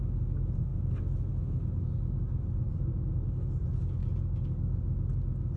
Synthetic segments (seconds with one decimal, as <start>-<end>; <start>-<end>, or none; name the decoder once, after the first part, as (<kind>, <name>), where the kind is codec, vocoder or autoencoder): none

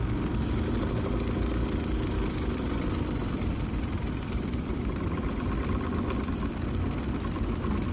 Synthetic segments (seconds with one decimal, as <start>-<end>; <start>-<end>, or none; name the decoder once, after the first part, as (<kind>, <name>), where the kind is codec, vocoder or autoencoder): 1.6-6.3 (vocoder, BigVGAN v2)